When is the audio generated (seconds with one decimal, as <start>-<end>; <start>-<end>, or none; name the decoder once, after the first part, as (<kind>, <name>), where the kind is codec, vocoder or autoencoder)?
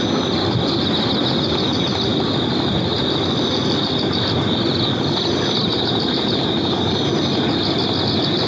none